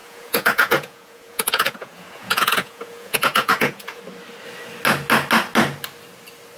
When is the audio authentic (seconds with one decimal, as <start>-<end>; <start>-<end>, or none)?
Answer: 4.0-6.6